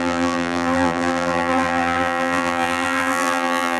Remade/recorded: remade